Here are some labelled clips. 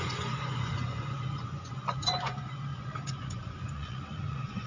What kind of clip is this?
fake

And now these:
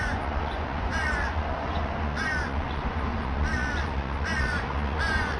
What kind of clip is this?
fake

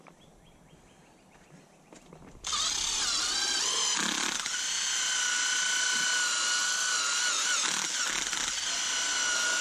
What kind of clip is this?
real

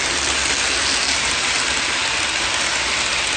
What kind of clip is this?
real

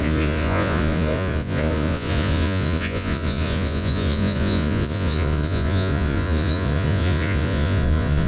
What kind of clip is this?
fake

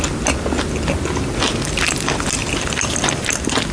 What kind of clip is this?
real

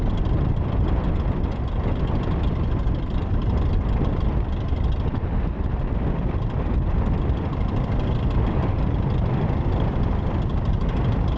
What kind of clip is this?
real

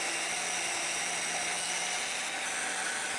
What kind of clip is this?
real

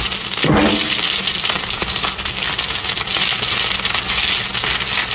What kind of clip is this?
real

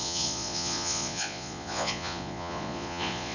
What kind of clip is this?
fake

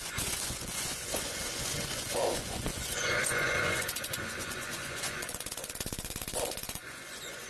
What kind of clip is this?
fake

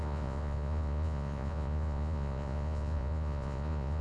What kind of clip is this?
fake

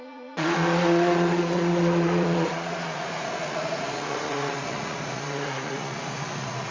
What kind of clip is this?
fake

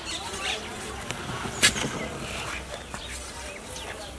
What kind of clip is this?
real